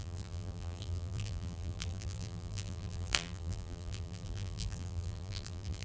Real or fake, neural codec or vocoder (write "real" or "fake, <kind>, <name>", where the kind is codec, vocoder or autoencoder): fake, vocoder, BigVGAN v2